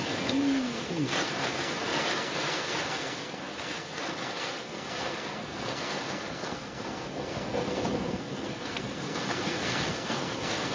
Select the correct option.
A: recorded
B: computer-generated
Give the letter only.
B